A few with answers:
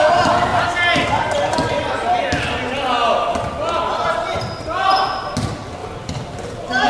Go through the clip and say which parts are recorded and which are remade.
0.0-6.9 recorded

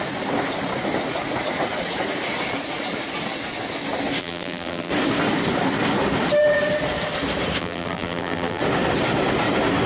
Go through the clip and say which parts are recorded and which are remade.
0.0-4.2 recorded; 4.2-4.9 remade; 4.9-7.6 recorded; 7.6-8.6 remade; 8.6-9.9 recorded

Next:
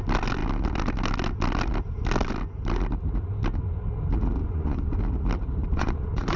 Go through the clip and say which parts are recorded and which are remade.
0.0-4.4 recorded; 4.4-5.0 remade; 5.0-5.7 recorded; 5.7-6.4 remade